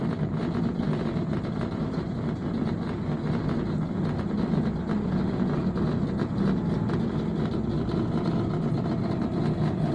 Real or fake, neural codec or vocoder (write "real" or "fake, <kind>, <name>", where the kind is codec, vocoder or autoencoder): real